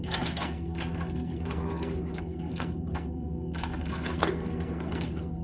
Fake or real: fake